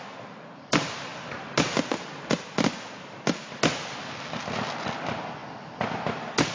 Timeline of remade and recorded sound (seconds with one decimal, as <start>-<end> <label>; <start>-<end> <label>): 0.0-6.5 recorded